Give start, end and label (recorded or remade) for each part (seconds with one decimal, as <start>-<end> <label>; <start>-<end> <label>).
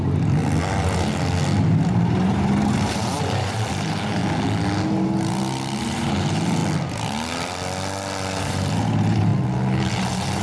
0.0-0.4 remade; 0.4-1.9 recorded; 1.9-4.2 remade; 4.2-5.8 recorded; 5.8-6.6 remade; 6.6-8.4 recorded; 8.4-9.3 remade; 9.3-9.9 recorded; 9.9-10.4 remade